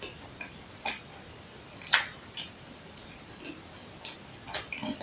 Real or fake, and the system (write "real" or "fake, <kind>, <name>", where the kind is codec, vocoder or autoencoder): real